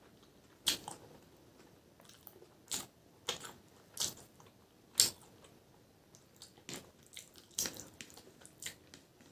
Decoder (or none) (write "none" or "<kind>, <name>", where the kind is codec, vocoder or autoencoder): none